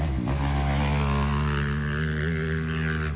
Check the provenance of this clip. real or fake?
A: real